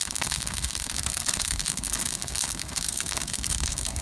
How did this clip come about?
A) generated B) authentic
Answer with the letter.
A